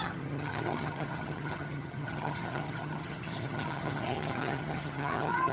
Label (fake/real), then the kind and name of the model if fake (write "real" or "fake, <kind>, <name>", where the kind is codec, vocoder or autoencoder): fake, vocoder, HiFi-GAN